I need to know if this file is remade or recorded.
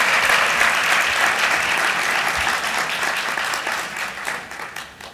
recorded